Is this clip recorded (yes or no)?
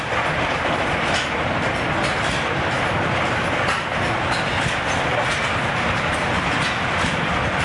yes